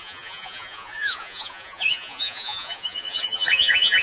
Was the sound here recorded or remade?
remade